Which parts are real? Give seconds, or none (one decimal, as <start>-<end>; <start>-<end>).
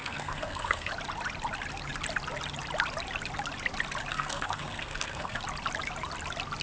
0.9-4.1; 5.4-6.6